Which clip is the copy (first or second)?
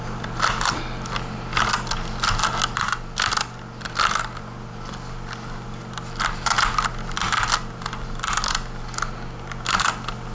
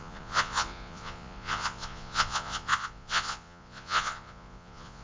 second